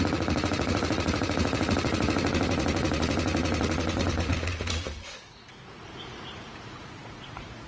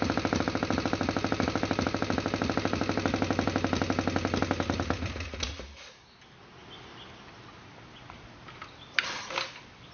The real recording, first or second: second